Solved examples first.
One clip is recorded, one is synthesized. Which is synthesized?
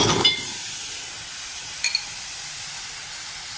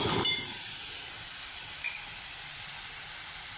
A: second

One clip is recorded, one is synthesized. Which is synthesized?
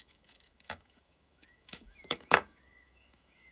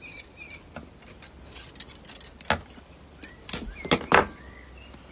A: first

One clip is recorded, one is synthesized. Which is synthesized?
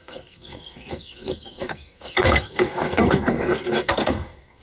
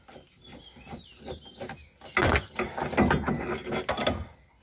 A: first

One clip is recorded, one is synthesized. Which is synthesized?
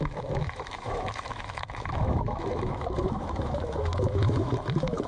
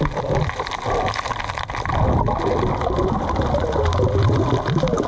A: first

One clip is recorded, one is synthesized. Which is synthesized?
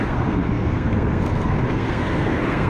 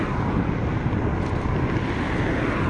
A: first